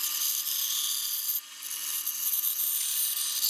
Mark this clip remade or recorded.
recorded